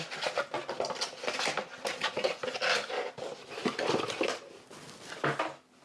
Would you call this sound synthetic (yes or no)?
no